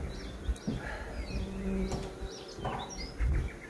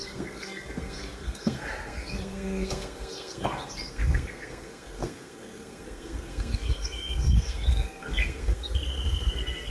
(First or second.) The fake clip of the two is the second